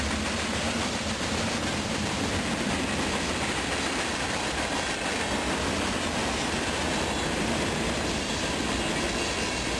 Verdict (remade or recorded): recorded